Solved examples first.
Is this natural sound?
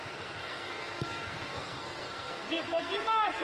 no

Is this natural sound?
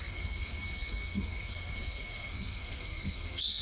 no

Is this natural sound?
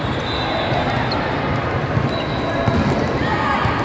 yes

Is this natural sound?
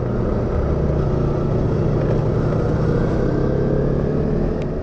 yes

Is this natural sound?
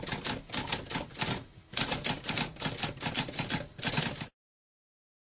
yes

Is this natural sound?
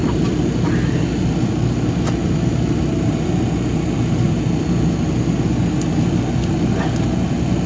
yes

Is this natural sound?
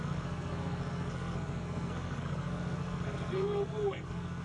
no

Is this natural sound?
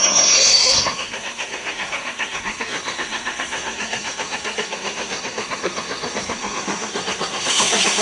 no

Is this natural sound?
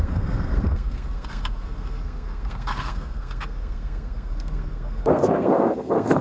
no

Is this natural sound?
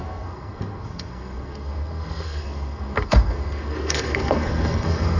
no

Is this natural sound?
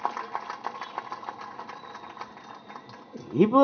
yes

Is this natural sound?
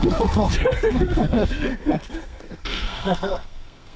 no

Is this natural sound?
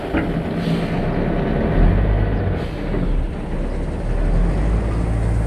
yes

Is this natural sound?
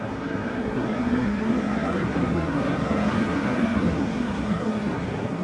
no